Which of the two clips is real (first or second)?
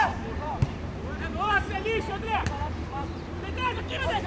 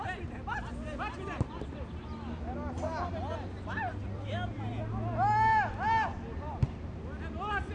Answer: second